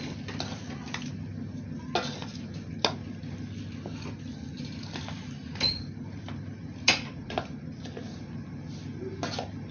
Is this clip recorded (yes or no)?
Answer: yes